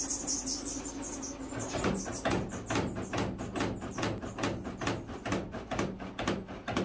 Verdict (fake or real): real